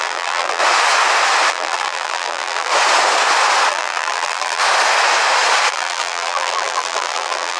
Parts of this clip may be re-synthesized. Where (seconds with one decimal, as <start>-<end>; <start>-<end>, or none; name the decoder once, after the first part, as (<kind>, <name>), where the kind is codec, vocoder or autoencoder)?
0.0-0.6 (vocoder, BigVGAN v2); 1.5-2.7; 3.7-4.6; 5.7-7.6